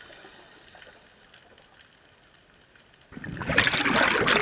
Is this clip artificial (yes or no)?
no